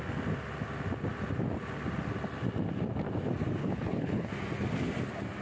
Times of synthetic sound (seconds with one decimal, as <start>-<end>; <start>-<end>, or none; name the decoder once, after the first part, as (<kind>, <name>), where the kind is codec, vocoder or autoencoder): 3.6-4.3 (codec, HILCodec)